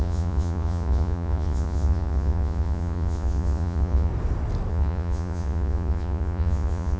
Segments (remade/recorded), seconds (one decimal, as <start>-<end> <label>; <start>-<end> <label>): 0.0-4.1 remade; 4.1-4.7 recorded; 4.7-7.0 remade